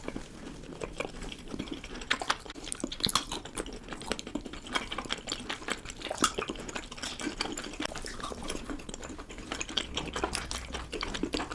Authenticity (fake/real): real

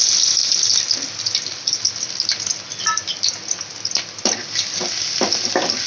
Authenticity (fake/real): real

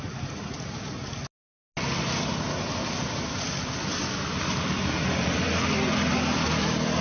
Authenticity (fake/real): real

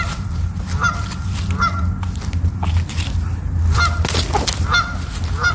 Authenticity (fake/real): fake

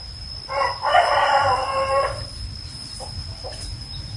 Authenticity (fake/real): fake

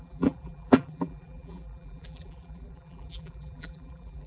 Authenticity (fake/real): fake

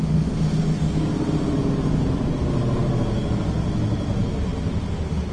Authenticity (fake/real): real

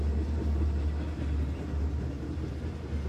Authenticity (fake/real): real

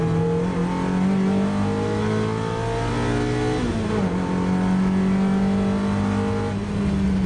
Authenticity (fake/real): real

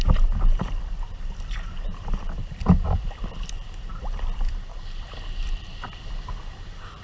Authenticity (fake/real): fake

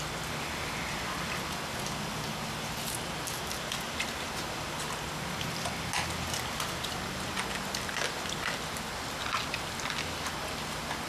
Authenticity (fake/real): real